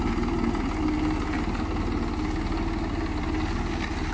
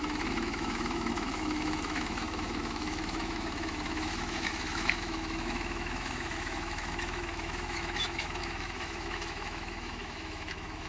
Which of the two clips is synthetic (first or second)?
second